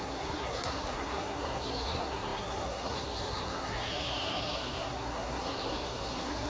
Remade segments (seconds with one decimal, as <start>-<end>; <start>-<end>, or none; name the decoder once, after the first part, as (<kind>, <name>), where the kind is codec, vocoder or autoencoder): 0.0-6.5 (codec, SNAC)